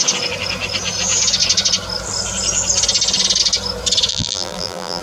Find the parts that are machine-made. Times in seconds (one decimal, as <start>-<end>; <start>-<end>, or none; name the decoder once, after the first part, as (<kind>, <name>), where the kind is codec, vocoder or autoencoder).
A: 4.1-5.0 (vocoder, BigVGAN v2)